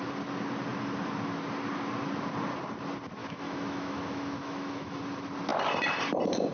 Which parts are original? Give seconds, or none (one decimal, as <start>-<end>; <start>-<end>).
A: 0.0-3.2; 5.0-6.5